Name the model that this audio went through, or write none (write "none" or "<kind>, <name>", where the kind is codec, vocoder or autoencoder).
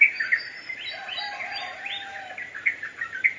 none